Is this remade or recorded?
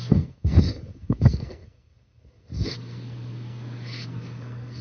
remade